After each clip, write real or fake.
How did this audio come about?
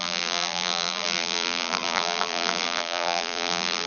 fake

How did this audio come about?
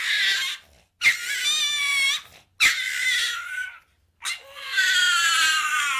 real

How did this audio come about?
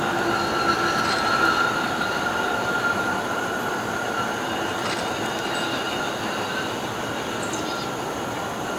real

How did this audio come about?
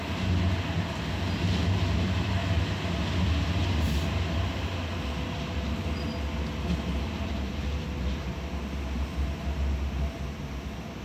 real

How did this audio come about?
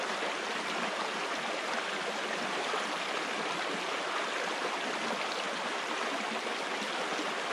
real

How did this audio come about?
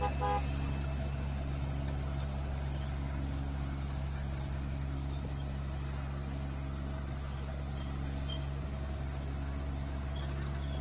real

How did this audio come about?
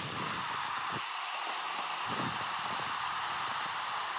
fake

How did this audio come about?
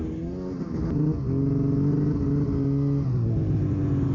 real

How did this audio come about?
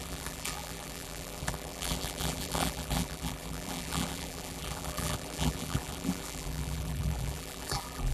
fake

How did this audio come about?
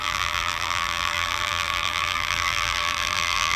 fake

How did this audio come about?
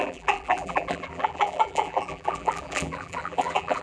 fake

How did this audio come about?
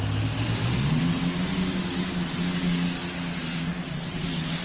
real